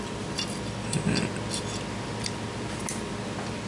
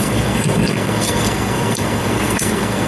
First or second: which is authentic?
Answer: first